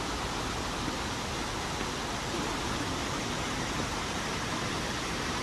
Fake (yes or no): no